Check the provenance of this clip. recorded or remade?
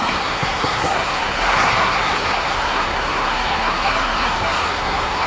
remade